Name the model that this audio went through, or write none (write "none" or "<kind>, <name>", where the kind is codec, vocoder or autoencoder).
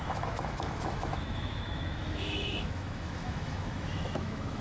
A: autoencoder, DAC-VAE